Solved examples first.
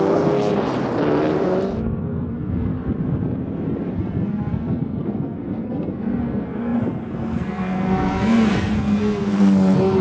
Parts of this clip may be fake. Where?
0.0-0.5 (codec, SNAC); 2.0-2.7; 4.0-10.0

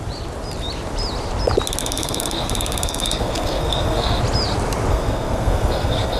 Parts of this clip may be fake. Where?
1.8-4.2 (codec, SNAC); 4.9-6.2

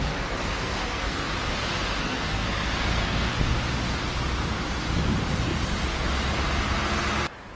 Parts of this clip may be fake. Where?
0.0-1.3 (codec, SNAC); 2.0-3.3

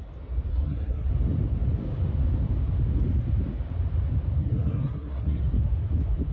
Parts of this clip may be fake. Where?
0.5-1.1 (codec, SNAC); 4.4-5.4

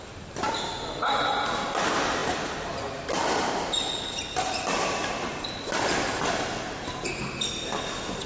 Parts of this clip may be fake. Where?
none

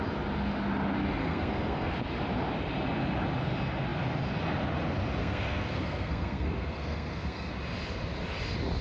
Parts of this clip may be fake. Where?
1.2-1.9 (codec, SNAC); 5.2-7.5

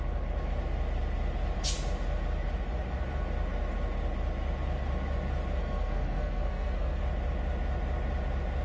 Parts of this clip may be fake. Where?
5.6-7.0 (codec, SNAC)

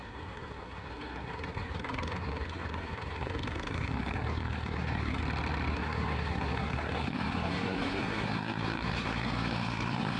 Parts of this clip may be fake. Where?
0.0-5.2 (codec, SNAC); 5.7-10.2